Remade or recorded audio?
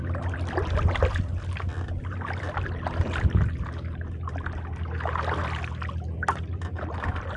recorded